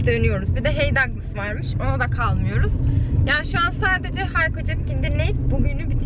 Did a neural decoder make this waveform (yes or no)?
no